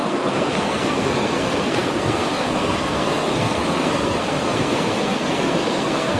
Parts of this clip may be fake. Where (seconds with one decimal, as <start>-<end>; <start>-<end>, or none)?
0.0-6.2